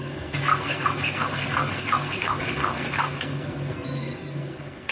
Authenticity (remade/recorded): remade